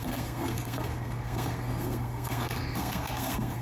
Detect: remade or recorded remade